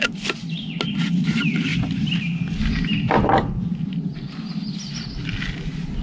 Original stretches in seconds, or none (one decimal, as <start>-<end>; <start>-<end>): 0.0-6.0